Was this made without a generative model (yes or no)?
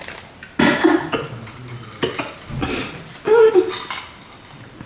yes